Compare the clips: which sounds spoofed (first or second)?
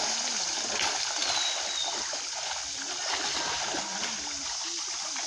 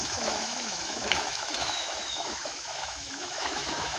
second